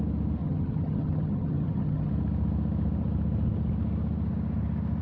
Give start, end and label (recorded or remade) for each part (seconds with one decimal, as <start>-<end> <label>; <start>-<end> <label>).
0.0-0.4 recorded; 0.4-2.1 remade; 2.1-5.0 recorded